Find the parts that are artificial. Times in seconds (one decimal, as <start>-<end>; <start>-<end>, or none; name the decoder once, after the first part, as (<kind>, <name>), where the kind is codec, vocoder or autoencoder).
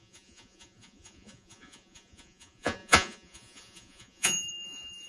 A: 0.0-5.1 (vocoder, Vocos)